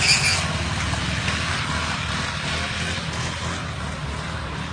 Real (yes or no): yes